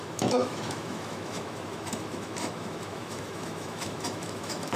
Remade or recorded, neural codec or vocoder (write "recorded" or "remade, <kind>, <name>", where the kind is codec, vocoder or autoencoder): remade, autoencoder, DAC-VAE